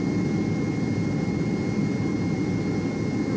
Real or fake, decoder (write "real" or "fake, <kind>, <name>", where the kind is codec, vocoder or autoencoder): real